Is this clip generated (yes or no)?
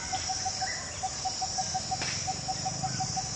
no